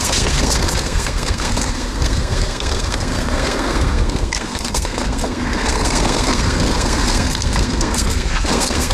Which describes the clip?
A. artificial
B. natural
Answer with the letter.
A